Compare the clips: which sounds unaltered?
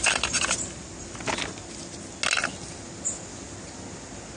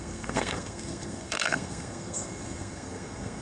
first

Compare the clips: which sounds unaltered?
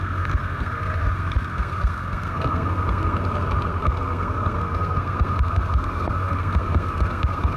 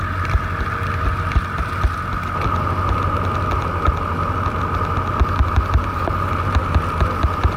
second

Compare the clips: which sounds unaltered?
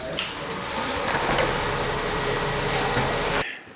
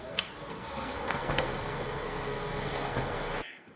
first